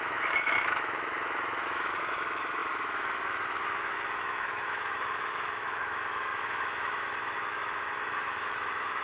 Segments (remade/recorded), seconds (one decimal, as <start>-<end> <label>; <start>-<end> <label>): 0.0-9.0 remade